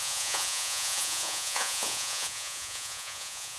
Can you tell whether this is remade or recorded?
remade